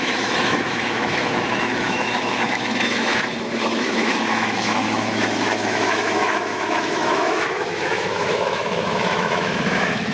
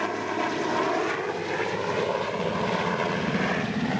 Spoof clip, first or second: first